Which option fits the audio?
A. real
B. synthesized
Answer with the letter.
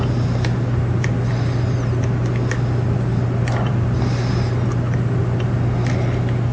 A